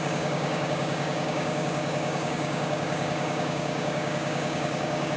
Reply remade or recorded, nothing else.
remade